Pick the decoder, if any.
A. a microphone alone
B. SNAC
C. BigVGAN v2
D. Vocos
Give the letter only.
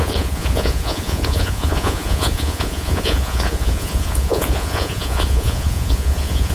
D